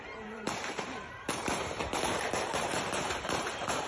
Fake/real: fake